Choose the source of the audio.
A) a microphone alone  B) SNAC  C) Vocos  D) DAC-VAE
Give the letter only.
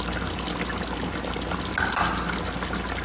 A